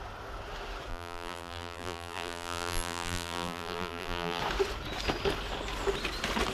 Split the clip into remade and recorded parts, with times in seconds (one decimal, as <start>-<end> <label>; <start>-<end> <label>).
0.0-0.9 recorded; 0.9-4.4 remade; 4.4-6.5 recorded